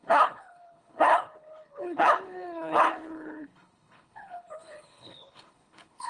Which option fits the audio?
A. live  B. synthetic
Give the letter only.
B